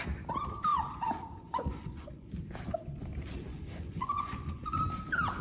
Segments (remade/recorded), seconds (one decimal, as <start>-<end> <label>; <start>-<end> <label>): 0.0-0.7 recorded; 0.7-2.3 remade; 2.3-3.5 recorded; 3.5-4.8 remade; 4.8-5.4 recorded

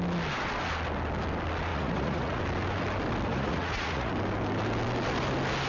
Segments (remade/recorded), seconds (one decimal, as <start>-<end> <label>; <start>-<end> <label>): 0.0-1.7 recorded; 1.7-2.4 remade; 2.4-3.3 recorded; 3.3-4.1 remade; 4.1-5.7 recorded

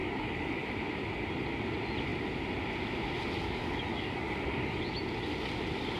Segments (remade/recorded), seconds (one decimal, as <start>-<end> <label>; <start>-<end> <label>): 0.0-0.7 remade; 0.7-3.4 recorded; 3.4-4.8 remade; 4.8-6.0 recorded

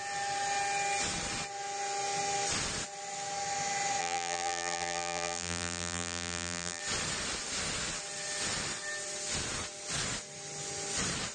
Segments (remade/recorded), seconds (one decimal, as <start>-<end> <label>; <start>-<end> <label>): 0.0-4.0 recorded; 4.0-6.8 remade; 6.8-11.3 recorded

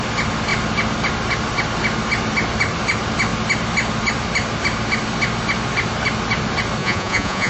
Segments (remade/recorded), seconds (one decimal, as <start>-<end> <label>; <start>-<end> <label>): 0.0-6.8 recorded; 6.8-7.5 remade